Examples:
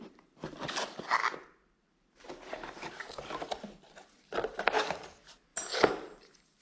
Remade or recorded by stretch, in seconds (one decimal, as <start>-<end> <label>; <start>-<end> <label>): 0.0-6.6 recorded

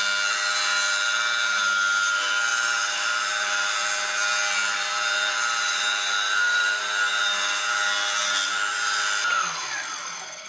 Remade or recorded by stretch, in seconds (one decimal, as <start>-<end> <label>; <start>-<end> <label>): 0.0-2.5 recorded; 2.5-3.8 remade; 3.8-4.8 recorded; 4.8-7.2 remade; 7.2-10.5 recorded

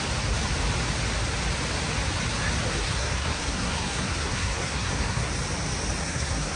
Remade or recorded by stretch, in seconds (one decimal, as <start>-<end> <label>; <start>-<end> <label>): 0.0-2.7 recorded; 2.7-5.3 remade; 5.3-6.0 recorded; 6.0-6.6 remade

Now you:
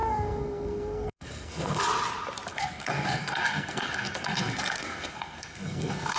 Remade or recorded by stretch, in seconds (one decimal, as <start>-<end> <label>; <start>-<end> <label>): 0.0-1.8 remade; 1.8-2.5 recorded; 2.5-6.2 remade

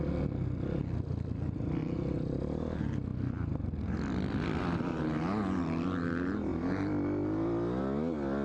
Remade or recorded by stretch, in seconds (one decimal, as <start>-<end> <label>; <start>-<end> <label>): 0.0-8.4 recorded

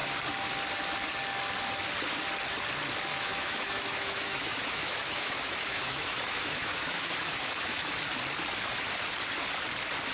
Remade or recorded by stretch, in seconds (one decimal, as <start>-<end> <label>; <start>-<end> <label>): 0.0-3.1 recorded; 3.1-7.9 remade; 7.9-10.1 recorded